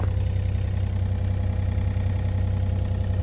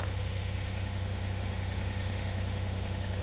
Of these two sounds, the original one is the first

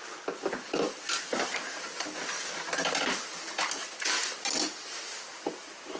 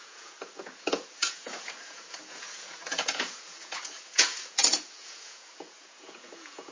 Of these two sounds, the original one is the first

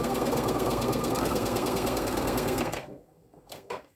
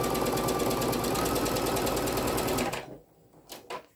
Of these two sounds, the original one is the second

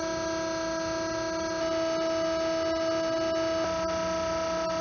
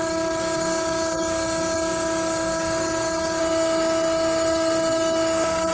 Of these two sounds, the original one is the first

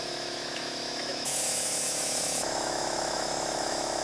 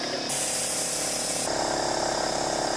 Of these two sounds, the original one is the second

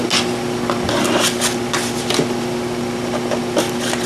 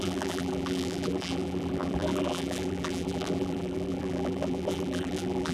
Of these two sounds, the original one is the first